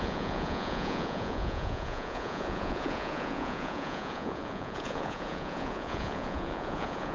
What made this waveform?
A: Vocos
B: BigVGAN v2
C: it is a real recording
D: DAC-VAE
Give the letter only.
A